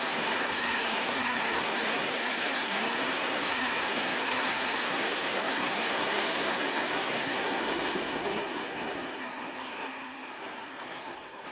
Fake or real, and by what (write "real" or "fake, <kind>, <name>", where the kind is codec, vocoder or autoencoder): fake, codec, SNAC